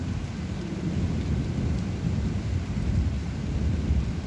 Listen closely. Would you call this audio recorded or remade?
recorded